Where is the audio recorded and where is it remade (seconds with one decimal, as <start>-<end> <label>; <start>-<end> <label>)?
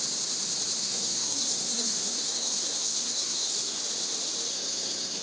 0.0-0.8 recorded; 0.8-3.8 remade; 3.8-4.5 recorded; 4.5-5.2 remade